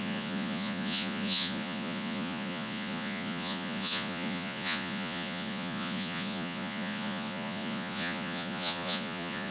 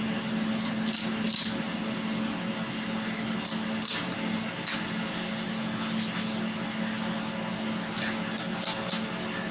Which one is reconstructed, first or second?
first